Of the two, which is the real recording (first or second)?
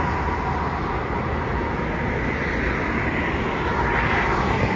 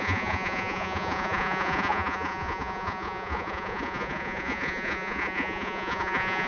first